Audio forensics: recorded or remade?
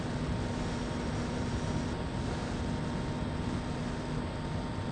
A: recorded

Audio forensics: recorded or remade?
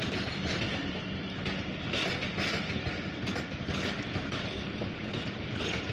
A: recorded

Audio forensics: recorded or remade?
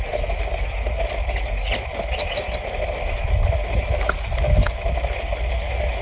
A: recorded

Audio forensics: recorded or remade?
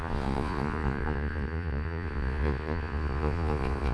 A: remade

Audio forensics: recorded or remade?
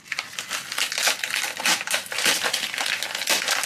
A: recorded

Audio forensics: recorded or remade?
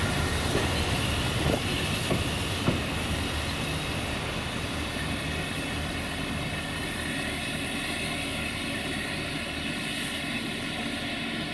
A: recorded